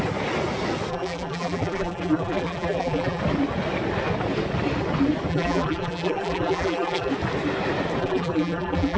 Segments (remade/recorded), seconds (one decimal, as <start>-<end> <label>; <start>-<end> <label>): 0.0-0.9 recorded; 0.9-3.2 remade; 3.2-5.3 recorded; 5.3-7.1 remade; 7.1-8.0 recorded; 8.0-9.0 remade